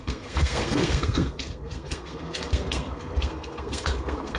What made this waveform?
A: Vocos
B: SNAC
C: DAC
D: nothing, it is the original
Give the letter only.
B